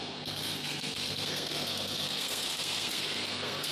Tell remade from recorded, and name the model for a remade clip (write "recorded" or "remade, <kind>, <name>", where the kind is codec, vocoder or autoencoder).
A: remade, codec, SNAC